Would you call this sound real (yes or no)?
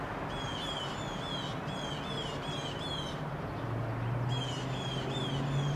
yes